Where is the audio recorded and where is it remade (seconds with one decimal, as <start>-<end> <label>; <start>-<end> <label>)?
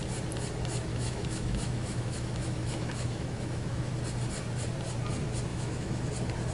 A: 0.0-0.9 recorded; 0.9-3.9 remade; 3.9-5.5 recorded; 5.5-6.1 remade; 6.1-6.5 recorded